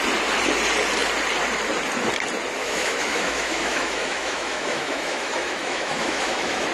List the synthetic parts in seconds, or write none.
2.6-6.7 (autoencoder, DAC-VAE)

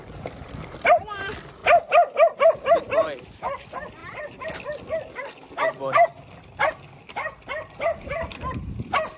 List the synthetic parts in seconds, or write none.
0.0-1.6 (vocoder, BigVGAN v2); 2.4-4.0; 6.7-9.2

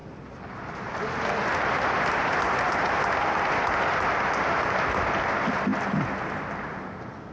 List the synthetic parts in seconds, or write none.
none

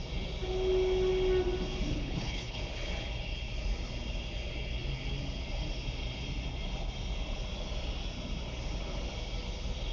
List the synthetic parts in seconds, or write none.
1.9-2.6 (codec, HILCodec)

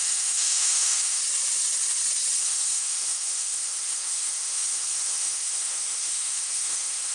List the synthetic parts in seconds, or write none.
0.0-1.2 (autoencoder, DAC-VAE); 2.4-7.1

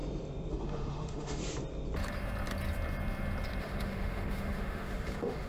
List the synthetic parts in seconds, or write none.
0.5-1.4 (autoencoder, DAC-VAE); 3.6-5.5